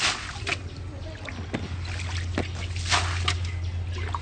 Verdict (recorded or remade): recorded